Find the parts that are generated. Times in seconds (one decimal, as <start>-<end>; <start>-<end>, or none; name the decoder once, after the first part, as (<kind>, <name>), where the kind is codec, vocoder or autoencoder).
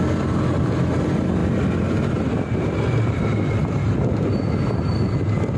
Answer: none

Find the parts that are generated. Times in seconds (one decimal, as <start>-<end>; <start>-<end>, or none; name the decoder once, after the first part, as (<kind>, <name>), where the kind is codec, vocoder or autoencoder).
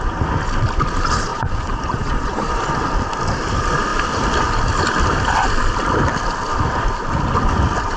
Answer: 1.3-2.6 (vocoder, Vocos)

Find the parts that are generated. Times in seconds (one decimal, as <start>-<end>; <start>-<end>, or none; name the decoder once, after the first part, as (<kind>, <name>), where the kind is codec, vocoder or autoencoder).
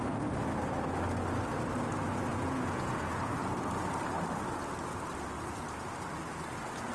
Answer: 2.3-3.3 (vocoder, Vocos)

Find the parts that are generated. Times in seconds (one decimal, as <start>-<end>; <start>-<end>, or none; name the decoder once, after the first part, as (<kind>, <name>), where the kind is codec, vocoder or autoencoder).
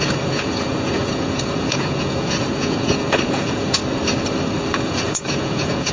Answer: 0.0-3.8 (vocoder, Vocos); 4.7-5.9